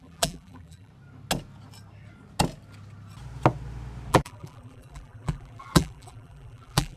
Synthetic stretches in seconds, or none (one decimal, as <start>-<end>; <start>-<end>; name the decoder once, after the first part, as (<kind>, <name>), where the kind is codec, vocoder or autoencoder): 0.0-0.9 (vocoder, BigVGAN v2); 4.1-7.0